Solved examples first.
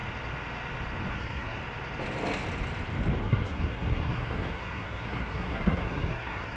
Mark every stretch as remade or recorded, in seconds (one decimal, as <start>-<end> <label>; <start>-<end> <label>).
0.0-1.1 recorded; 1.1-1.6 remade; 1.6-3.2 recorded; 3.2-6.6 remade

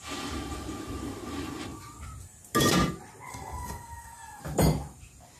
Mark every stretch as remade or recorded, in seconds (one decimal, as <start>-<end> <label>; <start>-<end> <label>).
0.0-3.3 recorded; 3.3-4.4 remade; 4.4-5.4 recorded

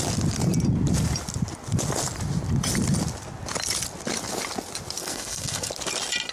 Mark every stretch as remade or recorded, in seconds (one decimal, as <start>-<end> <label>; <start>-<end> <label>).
0.0-5.0 recorded; 5.0-5.7 remade; 5.7-6.3 recorded

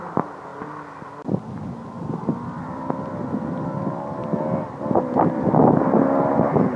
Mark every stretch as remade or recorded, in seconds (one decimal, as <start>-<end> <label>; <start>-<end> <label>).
0.0-6.8 recorded

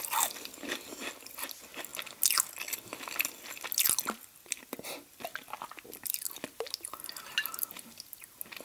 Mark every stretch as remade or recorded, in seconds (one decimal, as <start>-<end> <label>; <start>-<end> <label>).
0.0-8.6 recorded